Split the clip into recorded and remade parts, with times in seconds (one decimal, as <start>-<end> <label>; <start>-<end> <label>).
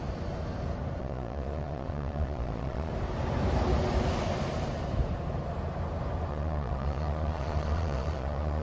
0.0-1.0 recorded; 1.0-2.9 remade; 2.9-6.3 recorded; 6.3-8.6 remade